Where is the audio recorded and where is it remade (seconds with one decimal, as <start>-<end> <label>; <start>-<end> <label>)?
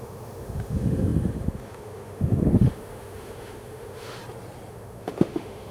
0.0-4.2 remade; 4.2-4.7 recorded; 4.7-5.7 remade